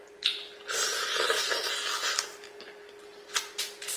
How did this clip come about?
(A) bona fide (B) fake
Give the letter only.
A